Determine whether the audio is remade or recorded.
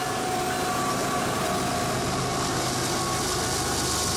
recorded